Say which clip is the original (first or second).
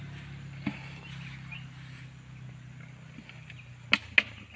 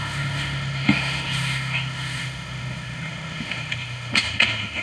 first